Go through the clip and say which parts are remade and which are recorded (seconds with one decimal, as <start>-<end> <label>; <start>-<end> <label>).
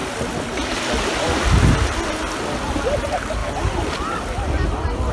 0.0-5.1 recorded